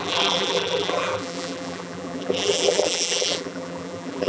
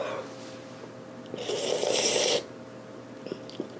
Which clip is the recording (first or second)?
second